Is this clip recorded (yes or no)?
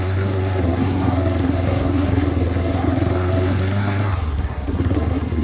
no